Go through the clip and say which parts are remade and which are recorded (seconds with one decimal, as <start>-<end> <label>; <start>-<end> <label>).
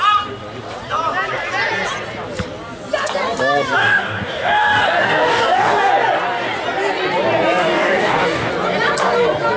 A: 0.0-3.8 recorded; 3.8-5.9 remade; 5.9-7.6 recorded; 7.6-8.5 remade; 8.5-9.6 recorded